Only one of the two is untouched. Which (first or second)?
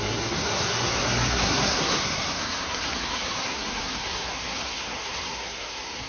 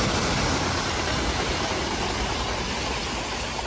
second